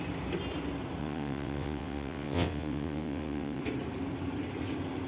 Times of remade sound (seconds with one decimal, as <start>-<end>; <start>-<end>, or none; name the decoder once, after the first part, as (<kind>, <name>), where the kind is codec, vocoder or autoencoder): 1.0-3.6 (vocoder, WaveNeXt)